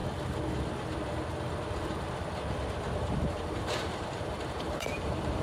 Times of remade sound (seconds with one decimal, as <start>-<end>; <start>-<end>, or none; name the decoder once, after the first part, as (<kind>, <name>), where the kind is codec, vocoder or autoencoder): 3.2-5.4 (vocoder, BigVGAN v2)